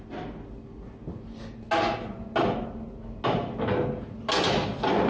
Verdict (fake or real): real